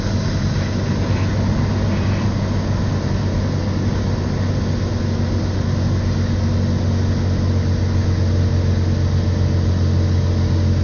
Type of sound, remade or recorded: recorded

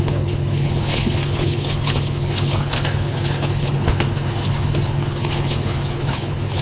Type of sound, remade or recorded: remade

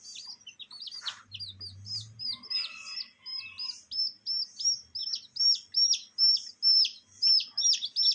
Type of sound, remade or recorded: recorded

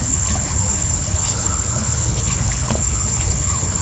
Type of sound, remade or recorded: remade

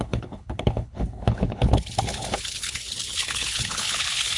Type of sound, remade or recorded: remade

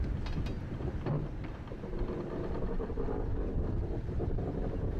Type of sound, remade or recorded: remade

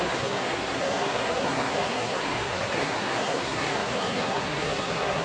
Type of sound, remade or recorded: remade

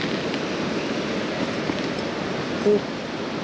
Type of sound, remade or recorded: recorded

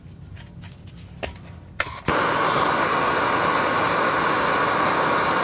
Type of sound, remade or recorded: recorded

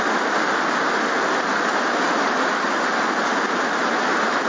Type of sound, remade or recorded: recorded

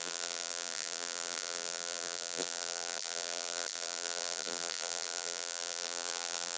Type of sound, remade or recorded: remade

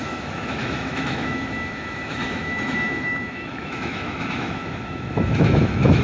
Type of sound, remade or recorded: remade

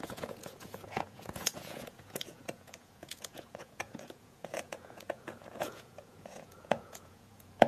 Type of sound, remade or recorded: remade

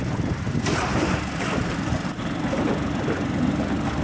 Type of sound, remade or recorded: recorded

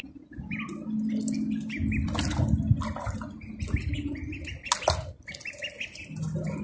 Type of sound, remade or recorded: recorded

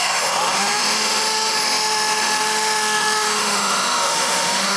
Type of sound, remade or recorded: remade